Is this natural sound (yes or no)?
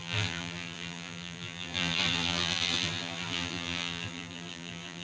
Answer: no